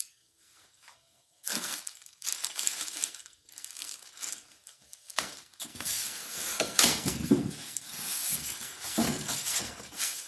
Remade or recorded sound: remade